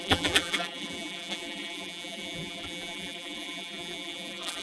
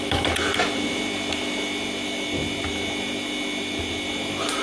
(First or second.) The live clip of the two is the second